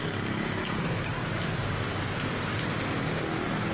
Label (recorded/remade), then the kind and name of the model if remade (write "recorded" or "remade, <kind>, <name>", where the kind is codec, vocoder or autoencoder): recorded